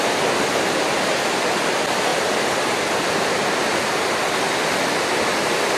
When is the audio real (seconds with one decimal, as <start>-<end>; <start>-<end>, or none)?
0.0-5.8